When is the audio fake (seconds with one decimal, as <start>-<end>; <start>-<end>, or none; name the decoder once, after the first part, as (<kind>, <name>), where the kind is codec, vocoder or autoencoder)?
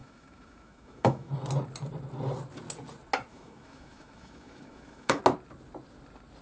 0.0-1.3 (autoencoder, DAC-VAE); 3.3-5.2